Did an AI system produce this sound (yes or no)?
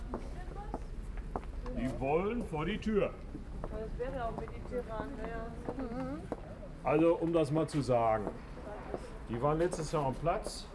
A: no